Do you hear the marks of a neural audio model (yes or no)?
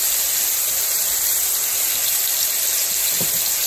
no